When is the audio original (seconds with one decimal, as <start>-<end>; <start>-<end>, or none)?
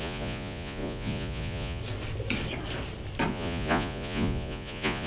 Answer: 1.8-3.3